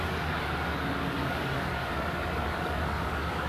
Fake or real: fake